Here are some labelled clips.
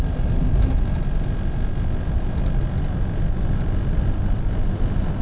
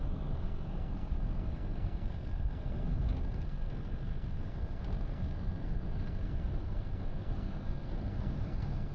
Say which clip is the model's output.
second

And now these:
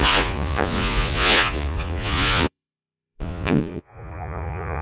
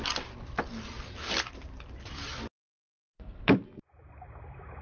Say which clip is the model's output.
first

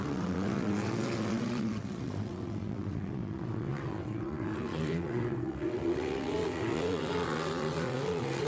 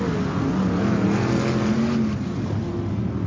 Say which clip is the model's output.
first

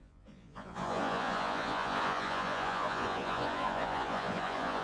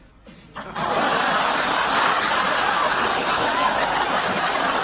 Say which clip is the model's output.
first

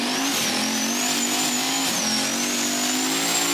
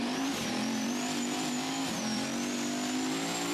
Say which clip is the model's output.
second